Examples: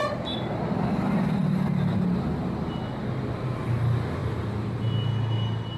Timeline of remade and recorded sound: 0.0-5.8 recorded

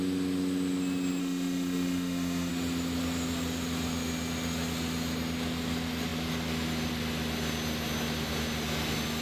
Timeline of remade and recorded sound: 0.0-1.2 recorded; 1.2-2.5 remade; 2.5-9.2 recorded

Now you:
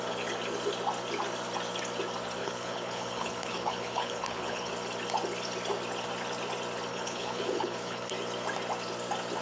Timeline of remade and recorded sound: 0.0-2.4 recorded; 2.4-4.7 remade; 4.7-6.9 recorded; 6.9-8.1 remade; 8.1-9.4 recorded